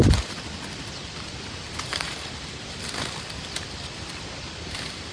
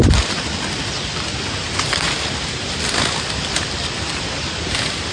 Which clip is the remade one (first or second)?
first